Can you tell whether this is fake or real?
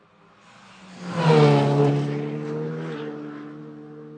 real